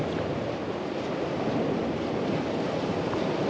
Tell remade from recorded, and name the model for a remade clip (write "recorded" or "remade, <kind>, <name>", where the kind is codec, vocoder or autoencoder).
recorded